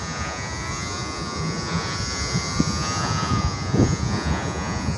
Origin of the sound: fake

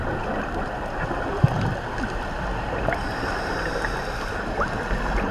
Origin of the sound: real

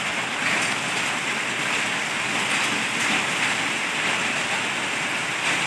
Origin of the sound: real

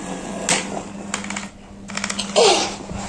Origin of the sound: real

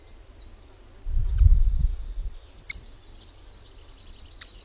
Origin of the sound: real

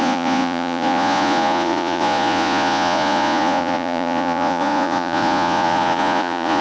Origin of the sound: fake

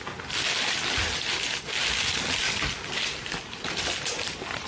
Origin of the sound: real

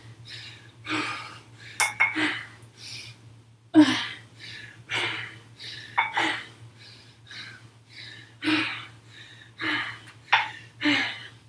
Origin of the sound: real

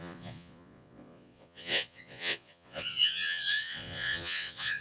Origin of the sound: fake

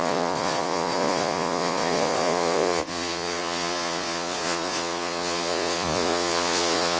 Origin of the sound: fake